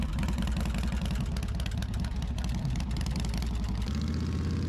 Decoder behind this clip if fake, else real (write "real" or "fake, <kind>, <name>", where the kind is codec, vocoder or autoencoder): real